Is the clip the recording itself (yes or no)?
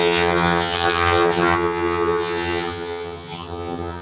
no